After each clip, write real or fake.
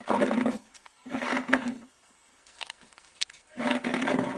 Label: fake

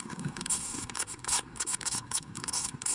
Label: fake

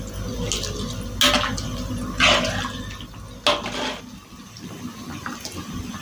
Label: real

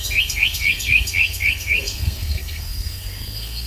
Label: fake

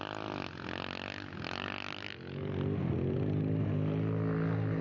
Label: real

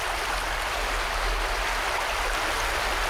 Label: real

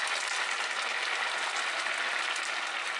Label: real